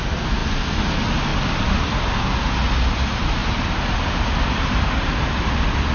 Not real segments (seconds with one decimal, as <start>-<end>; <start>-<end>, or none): 3.4-5.1